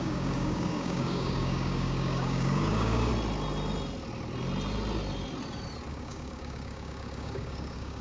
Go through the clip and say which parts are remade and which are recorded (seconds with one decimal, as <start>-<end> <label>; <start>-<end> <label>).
0.0-3.1 remade; 3.1-5.9 recorded; 5.9-8.0 remade